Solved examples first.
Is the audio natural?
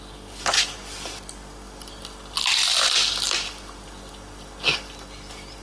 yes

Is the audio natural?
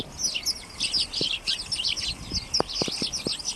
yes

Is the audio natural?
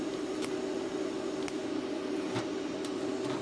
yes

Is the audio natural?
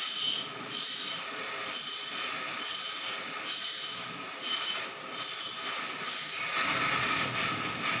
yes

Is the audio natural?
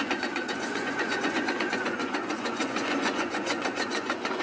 no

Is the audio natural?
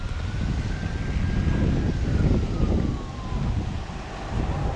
yes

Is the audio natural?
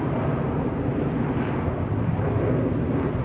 yes